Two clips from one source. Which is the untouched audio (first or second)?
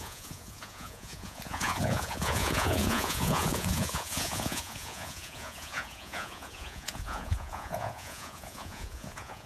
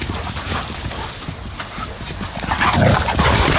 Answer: second